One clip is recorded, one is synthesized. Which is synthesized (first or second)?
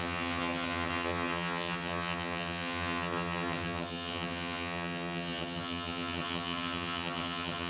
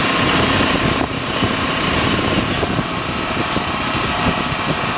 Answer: first